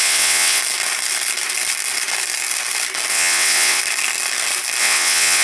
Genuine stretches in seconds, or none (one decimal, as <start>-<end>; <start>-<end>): 0.6-3.1; 3.8-4.8